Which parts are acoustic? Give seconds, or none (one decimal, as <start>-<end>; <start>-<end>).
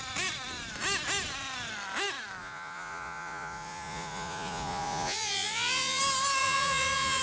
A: 0.0-2.4; 6.0-6.4